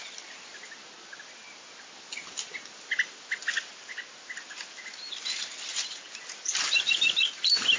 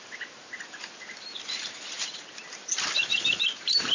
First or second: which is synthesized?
second